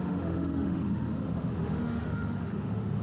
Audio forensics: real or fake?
fake